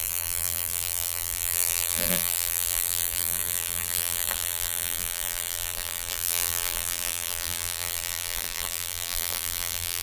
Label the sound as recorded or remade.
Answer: remade